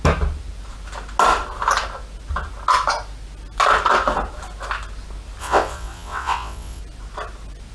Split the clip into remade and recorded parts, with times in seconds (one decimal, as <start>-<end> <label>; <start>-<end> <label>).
0.0-5.4 recorded; 5.4-6.8 remade; 6.8-7.7 recorded